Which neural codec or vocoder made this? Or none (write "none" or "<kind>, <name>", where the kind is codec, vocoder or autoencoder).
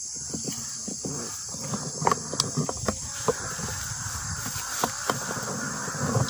none